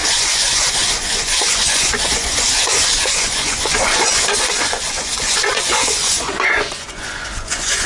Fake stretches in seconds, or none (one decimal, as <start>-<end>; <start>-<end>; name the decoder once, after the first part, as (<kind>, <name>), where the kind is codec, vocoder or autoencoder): 0.0-7.9 (vocoder, Vocos)